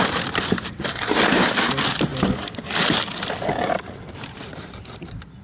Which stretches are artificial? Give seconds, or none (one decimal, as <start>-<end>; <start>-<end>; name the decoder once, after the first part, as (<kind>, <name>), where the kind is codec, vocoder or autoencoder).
none